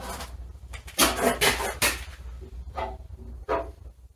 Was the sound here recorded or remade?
recorded